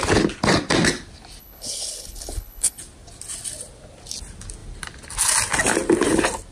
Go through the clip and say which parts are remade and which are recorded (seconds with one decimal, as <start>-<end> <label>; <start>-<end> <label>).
0.0-1.4 recorded; 1.4-2.8 remade; 2.8-6.5 recorded